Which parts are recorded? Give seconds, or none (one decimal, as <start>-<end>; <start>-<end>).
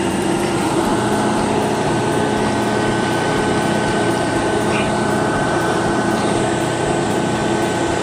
0.9-3.9; 7.4-8.0